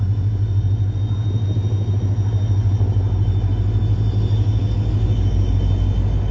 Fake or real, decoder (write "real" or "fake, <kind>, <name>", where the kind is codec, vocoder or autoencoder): real